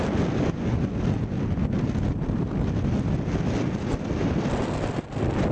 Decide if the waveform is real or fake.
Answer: real